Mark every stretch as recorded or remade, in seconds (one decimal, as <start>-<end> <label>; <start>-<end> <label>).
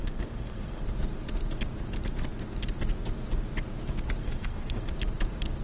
0.0-0.8 remade; 0.8-4.2 recorded; 4.2-4.9 remade; 4.9-5.6 recorded